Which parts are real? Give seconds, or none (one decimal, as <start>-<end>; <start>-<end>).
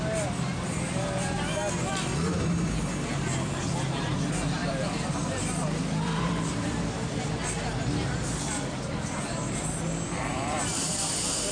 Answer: 0.0-4.6; 6.8-10.3; 11.0-11.5